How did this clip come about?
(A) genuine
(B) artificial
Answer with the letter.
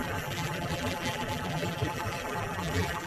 B